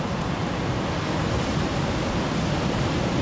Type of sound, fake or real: real